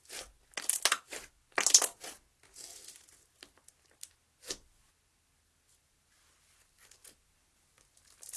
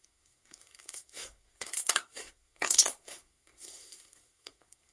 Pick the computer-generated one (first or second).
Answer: second